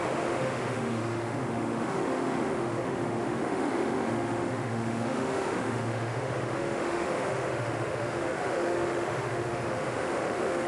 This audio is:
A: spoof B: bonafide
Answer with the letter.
A